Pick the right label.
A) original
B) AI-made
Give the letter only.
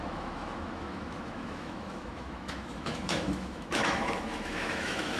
B